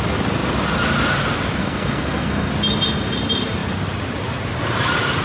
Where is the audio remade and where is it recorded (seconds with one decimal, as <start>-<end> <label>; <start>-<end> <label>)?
0.0-1.6 recorded; 1.6-2.5 remade; 2.5-5.2 recorded